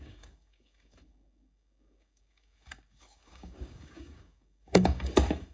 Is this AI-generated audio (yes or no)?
yes